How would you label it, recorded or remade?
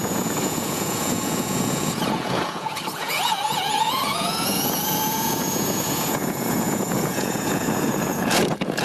remade